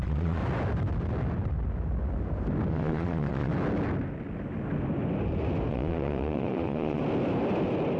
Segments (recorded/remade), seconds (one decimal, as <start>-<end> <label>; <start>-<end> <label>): 0.0-0.4 remade; 0.4-2.7 recorded; 2.7-3.5 remade; 3.5-5.7 recorded; 5.7-7.0 remade; 7.0-8.0 recorded